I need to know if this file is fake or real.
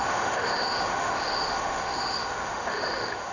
fake